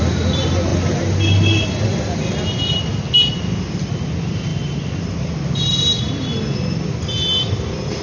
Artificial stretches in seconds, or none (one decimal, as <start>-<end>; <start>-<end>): none

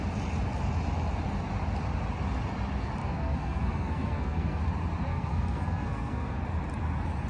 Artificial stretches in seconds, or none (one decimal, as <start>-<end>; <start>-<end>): 3.0-4.6; 5.1-6.4

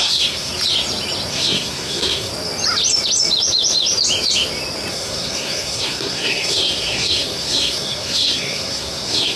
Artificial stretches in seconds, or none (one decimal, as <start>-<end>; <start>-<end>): 0.0-0.5; 1.3-2.3; 4.9-9.4

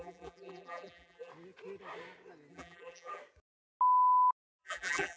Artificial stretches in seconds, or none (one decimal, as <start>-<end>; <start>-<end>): 0.0-1.3; 2.5-3.2; 4.6-5.2

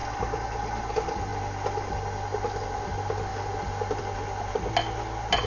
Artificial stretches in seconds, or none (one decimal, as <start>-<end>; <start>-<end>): none

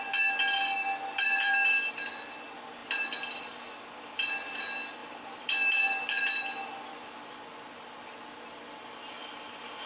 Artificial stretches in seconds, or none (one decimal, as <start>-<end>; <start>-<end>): 0.8-2.0; 2.8-4.6; 5.0-7.4